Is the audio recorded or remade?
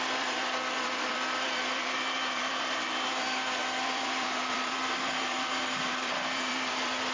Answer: remade